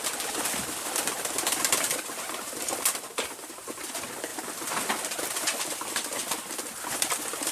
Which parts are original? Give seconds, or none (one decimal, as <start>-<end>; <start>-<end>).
none